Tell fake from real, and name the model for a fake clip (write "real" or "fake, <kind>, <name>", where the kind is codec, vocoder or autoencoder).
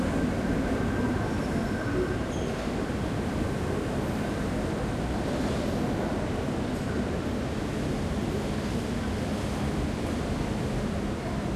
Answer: real